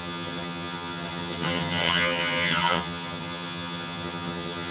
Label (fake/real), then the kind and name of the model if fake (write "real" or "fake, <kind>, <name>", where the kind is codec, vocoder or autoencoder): fake, vocoder, HiFi-GAN